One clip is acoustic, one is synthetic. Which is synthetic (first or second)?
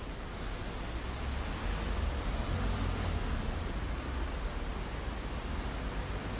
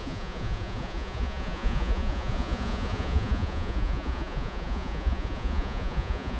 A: second